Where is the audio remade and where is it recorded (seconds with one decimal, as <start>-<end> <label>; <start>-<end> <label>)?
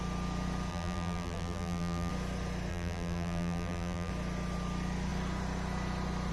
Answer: 0.0-0.7 recorded; 0.7-2.1 remade; 2.1-2.7 recorded; 2.7-4.1 remade; 4.1-6.3 recorded